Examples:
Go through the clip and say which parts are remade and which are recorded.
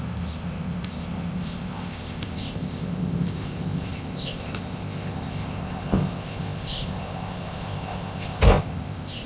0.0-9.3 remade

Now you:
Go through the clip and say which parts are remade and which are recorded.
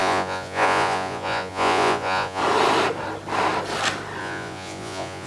0.0-2.4 remade; 2.4-4.2 recorded; 4.2-5.3 remade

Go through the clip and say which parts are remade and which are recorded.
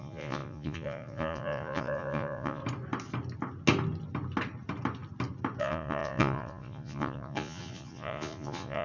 0.0-2.6 remade; 2.6-5.6 recorded; 5.6-8.8 remade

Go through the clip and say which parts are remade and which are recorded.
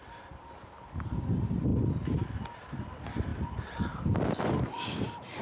0.0-5.4 recorded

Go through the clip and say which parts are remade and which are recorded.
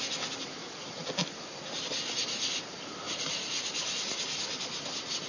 0.0-5.3 recorded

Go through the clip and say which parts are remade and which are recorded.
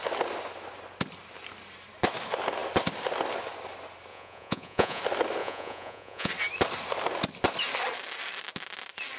0.0-4.1 recorded; 4.1-5.0 remade; 5.0-5.4 recorded; 5.4-6.3 remade; 6.3-9.2 recorded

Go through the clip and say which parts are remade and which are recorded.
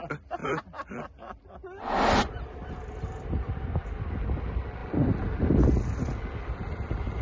0.0-7.2 recorded